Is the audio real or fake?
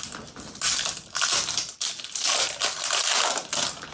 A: real